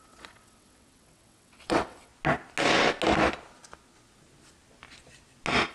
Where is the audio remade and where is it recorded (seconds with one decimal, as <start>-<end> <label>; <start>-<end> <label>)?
0.0-2.1 remade; 2.1-5.7 recorded